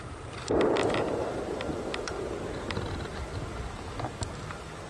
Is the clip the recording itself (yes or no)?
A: yes